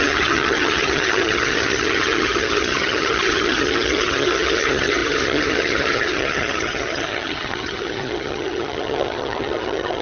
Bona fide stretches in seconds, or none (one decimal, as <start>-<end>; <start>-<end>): none